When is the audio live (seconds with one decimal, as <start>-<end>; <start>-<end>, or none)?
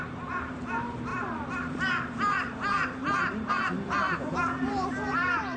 none